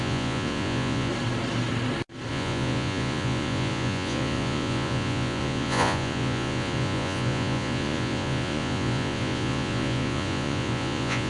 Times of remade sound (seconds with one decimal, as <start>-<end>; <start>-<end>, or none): 0.0-1.1; 2.3-11.3